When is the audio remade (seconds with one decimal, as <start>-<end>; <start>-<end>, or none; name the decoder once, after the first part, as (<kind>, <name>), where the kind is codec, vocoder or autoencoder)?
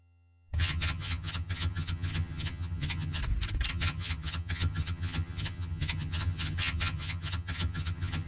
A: 0.0-3.2 (vocoder, HiFi-GAN); 3.7-8.3